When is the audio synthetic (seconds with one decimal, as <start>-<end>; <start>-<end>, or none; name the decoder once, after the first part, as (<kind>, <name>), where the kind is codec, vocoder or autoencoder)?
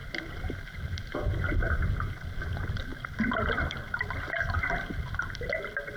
0.0-0.7 (vocoder, BigVGAN v2); 2.9-4.7